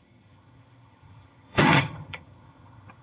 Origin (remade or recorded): remade